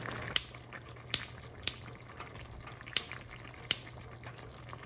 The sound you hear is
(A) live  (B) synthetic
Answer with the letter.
A